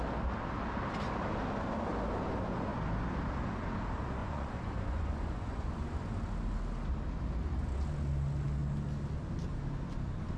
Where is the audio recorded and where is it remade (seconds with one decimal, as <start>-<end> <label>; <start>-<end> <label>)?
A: 0.0-4.2 recorded; 4.2-6.1 remade; 6.1-10.4 recorded